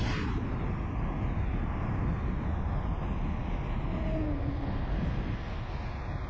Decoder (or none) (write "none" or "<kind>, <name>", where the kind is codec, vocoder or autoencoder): none